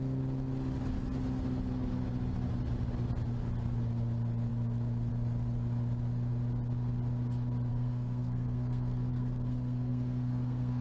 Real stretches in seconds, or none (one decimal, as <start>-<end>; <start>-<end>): 0.0-7.7